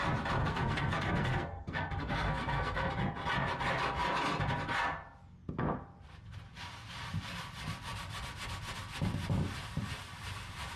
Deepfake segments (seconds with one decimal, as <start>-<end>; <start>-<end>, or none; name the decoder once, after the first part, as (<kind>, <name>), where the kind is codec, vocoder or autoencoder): 0.4-2.9 (codec, SNAC)